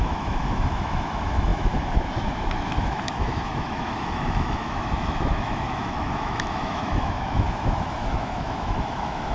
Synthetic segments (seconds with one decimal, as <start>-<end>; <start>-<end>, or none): 0.0-9.3